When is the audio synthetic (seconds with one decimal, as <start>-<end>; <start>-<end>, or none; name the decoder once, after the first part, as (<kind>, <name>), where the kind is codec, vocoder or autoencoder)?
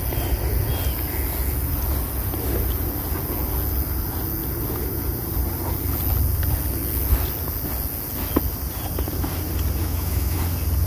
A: 9.8-10.4 (autoencoder, DAC-VAE)